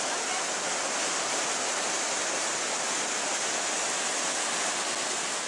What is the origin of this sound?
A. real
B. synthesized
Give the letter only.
A